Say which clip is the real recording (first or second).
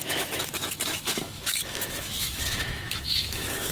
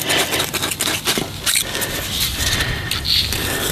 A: second